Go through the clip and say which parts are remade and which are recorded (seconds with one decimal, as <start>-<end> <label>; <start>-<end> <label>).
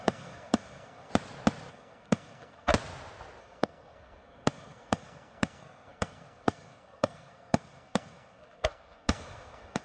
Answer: 0.0-1.1 remade; 1.1-1.7 recorded; 1.7-2.7 remade; 2.7-3.4 recorded; 3.4-9.8 remade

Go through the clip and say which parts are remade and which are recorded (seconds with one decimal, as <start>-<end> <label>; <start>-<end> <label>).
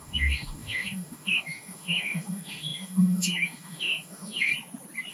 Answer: 0.0-4.5 remade; 4.5-5.1 recorded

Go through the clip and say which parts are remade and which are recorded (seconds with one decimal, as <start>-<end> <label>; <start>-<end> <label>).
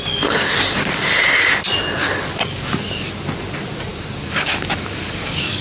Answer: 0.0-2.0 recorded; 2.0-3.1 remade; 3.1-3.9 recorded; 3.9-5.6 remade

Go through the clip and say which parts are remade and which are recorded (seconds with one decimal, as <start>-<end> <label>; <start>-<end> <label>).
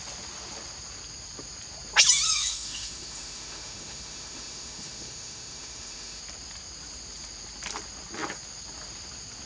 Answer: 0.0-2.3 recorded; 2.3-6.2 remade; 6.2-9.5 recorded